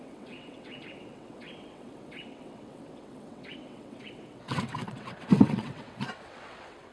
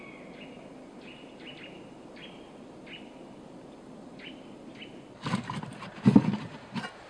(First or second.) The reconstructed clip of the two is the first